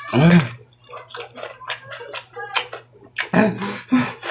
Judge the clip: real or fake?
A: real